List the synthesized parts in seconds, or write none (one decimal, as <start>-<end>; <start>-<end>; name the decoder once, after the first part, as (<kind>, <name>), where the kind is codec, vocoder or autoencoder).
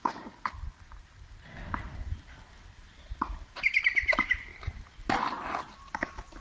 none